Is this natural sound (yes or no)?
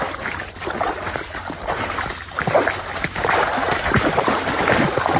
yes